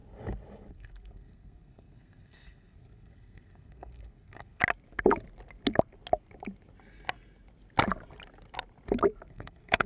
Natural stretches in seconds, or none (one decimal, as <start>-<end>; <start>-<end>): 0.0-0.7; 4.6-9.3